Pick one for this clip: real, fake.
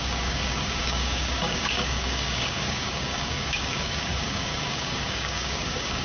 fake